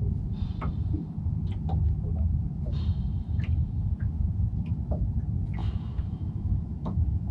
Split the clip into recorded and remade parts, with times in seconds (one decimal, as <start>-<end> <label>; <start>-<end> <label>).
0.0-5.6 recorded; 5.6-7.3 remade